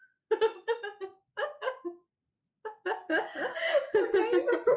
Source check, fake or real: real